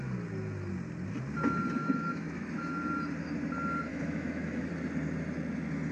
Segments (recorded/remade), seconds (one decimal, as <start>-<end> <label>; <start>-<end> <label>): 0.0-1.8 recorded; 1.8-2.8 remade; 2.8-3.9 recorded; 3.9-4.7 remade; 4.7-5.9 recorded